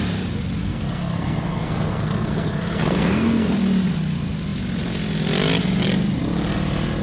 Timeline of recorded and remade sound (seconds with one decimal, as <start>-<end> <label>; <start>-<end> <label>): 0.0-0.6 recorded; 0.6-3.5 remade; 3.5-7.0 recorded

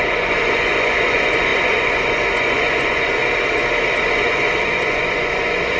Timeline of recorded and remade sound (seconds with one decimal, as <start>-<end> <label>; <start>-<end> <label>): 0.0-3.2 remade; 3.2-4.0 recorded; 4.0-5.8 remade